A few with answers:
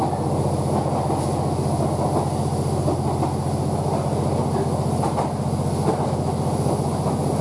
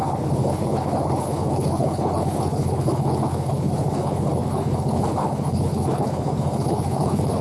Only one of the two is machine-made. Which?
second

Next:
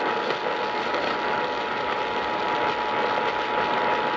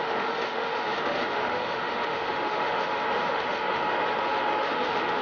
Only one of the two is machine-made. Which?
second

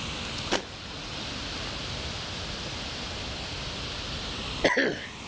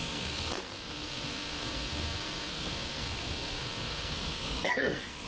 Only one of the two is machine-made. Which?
second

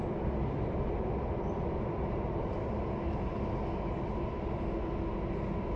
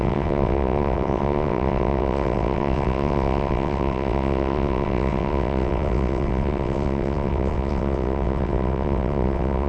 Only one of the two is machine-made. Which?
second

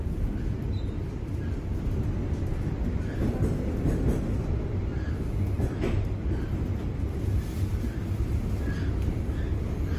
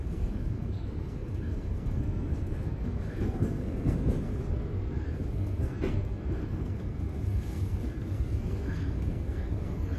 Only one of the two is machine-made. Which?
second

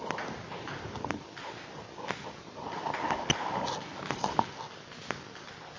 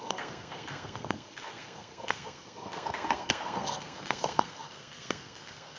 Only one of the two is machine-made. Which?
second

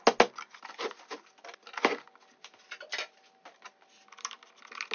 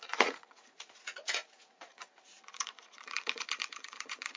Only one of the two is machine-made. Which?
second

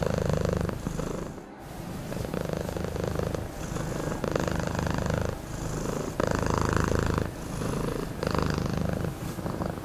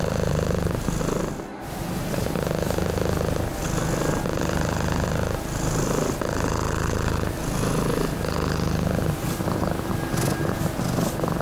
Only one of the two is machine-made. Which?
first